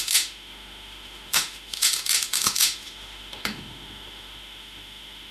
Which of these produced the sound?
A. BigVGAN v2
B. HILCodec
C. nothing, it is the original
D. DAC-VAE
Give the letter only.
D